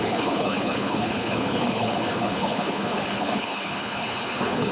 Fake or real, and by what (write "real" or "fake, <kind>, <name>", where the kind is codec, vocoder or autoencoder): fake, codec, HILCodec